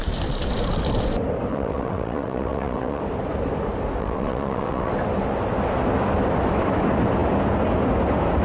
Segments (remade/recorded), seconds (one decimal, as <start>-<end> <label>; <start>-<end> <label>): 0.0-1.5 recorded; 1.5-3.0 remade; 3.0-4.0 recorded; 4.0-4.9 remade; 4.9-8.4 recorded